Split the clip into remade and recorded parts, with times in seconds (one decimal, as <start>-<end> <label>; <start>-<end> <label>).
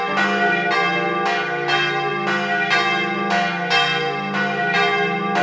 0.0-5.4 recorded